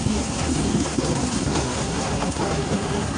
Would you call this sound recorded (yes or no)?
no